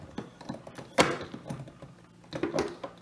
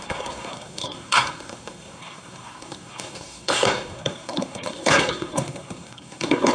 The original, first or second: first